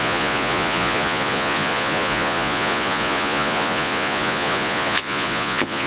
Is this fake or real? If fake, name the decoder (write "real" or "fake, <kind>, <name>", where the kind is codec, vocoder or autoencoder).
fake, vocoder, Vocos